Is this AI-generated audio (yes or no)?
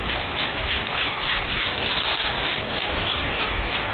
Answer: yes